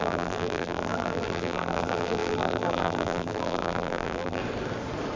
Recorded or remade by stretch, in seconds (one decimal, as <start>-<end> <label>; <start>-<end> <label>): 0.0-4.4 remade; 4.4-5.2 recorded